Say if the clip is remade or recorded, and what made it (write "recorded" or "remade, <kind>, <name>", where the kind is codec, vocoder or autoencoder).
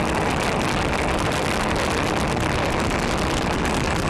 recorded